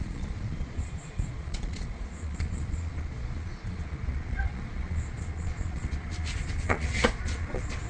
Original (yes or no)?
no